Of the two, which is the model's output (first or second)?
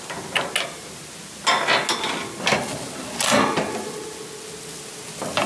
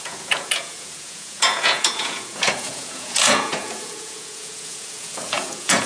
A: second